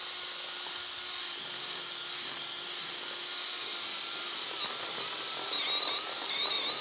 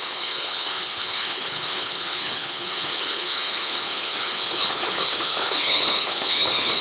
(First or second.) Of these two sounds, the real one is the first